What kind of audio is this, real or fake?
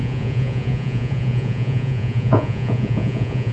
fake